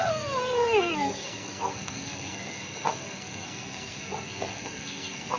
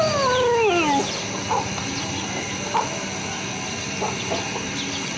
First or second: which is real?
second